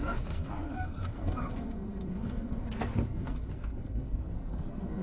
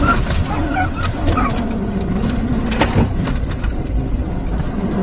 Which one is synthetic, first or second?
first